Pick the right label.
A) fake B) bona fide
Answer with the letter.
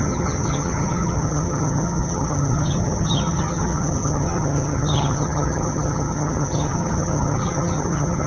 A